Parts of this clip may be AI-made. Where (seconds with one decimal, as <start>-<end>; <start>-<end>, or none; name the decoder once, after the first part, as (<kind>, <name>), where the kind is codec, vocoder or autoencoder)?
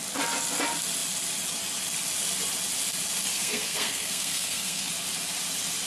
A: 3.3-4.9 (codec, SNAC)